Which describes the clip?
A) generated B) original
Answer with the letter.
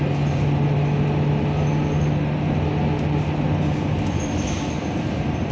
B